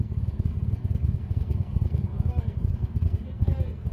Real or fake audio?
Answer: fake